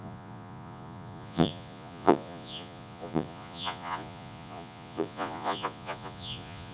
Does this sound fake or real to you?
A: fake